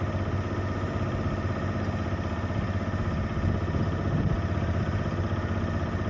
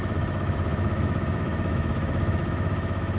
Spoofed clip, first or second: second